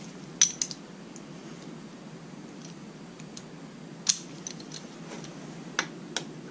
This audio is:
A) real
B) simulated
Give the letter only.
A